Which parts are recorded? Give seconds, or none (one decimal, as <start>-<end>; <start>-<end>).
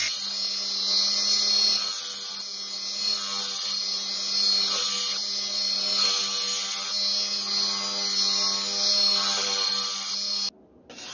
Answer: 0.0-11.1